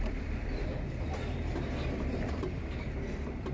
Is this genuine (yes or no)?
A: no